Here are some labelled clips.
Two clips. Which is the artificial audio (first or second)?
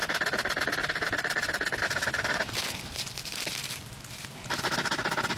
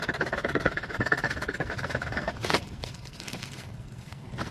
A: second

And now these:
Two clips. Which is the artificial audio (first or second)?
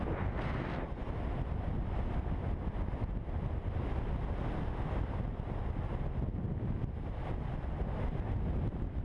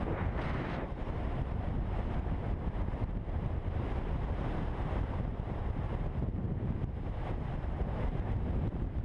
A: second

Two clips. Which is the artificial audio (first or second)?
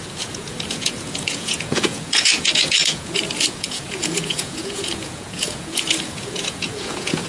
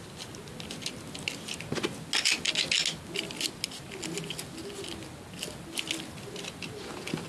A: first